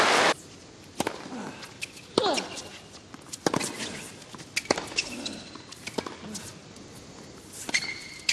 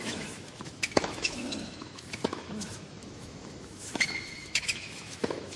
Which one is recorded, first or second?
first